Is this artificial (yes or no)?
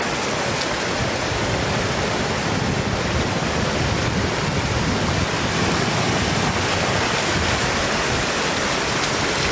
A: no